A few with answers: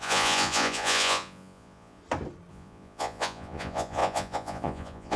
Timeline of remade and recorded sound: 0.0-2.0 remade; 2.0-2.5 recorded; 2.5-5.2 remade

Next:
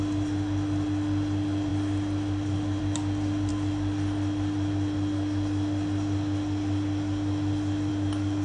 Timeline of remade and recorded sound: 0.0-8.4 recorded